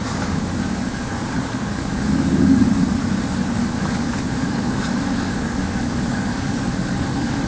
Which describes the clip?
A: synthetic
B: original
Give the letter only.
A